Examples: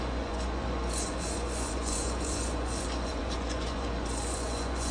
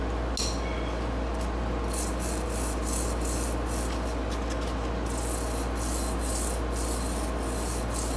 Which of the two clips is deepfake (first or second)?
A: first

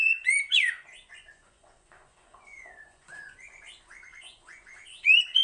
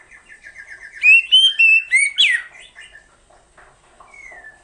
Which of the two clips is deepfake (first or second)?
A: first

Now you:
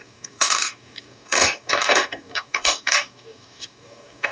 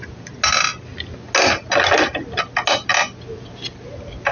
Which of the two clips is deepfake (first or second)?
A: first